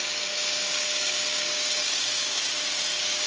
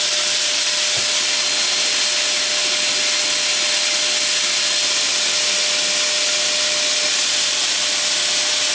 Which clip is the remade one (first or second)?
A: first